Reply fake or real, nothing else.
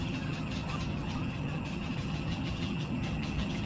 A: fake